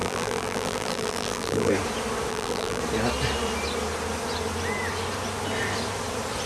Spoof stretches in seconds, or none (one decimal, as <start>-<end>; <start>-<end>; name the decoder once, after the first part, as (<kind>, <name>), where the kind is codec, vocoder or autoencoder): 0.0-1.7 (vocoder, BigVGAN v2); 2.3-2.8